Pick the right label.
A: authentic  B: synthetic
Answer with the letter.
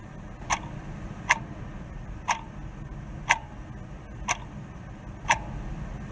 A